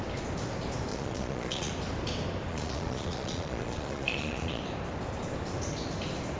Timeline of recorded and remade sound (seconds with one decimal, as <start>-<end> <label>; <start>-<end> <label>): 0.0-0.9 recorded; 0.9-1.7 remade; 1.7-2.5 recorded; 2.5-4.6 remade; 4.6-6.4 recorded

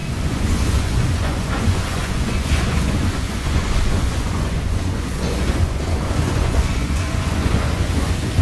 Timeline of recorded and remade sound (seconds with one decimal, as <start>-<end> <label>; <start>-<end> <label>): 0.0-8.4 remade

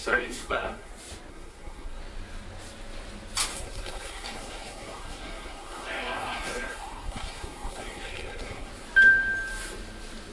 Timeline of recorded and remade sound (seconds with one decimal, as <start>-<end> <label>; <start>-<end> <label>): 0.0-0.9 remade; 0.9-1.3 recorded; 1.3-2.0 remade; 2.0-3.5 recorded; 3.5-8.7 remade; 8.7-10.3 recorded

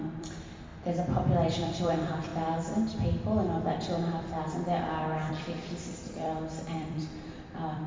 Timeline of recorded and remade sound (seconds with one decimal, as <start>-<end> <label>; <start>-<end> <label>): 0.0-0.7 remade; 0.7-1.7 recorded; 1.7-2.3 remade; 2.3-5.3 recorded; 5.3-7.9 remade

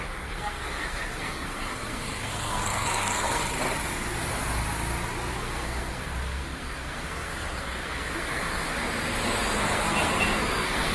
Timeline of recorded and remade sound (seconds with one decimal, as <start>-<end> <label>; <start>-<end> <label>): 0.0-3.4 remade; 3.4-5.3 recorded; 5.3-8.7 remade; 8.7-9.7 recorded; 9.7-10.9 remade

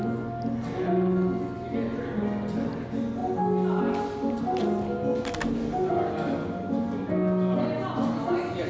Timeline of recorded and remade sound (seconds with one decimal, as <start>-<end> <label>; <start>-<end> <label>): 0.0-8.7 recorded